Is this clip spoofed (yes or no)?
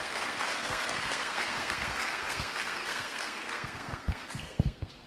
yes